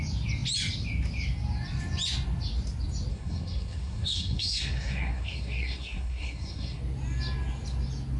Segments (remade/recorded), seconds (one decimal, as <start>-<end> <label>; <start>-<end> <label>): 0.0-3.1 recorded; 3.1-6.8 remade; 6.8-8.2 recorded